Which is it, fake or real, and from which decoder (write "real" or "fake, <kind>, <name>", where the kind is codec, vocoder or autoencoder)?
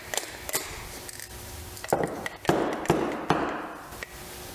real